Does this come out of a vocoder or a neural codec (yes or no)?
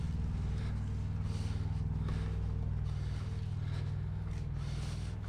no